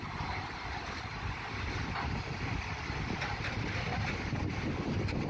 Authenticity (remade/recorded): recorded